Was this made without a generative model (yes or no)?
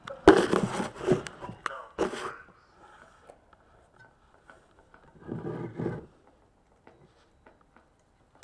yes